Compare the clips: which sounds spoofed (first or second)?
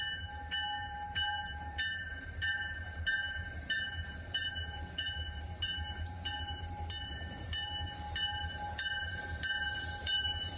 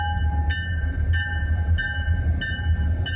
first